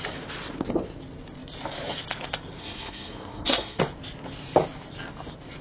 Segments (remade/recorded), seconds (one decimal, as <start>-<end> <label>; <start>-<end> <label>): 0.0-2.6 recorded; 2.6-3.8 remade; 3.8-5.6 recorded